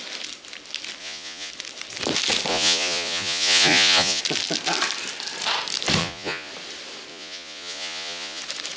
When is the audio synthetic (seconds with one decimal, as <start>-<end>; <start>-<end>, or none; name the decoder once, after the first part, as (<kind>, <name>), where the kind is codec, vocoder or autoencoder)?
1.0-1.5 (vocoder, Vocos); 2.5-4.2; 6.0-6.5; 7.1-8.4